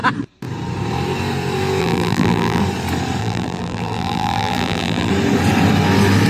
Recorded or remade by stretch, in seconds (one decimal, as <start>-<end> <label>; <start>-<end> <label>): 0.0-1.8 recorded; 1.8-2.6 remade; 2.6-3.2 recorded; 3.2-5.1 remade; 5.1-6.3 recorded